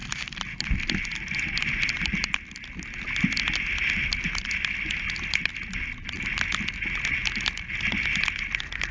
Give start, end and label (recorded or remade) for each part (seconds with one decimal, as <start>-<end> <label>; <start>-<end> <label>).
0.0-8.9 recorded